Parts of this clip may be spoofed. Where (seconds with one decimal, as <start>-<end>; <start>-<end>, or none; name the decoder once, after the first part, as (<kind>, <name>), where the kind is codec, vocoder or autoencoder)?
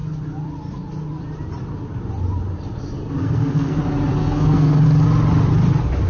3.2-3.8 (codec, SNAC); 4.2-4.8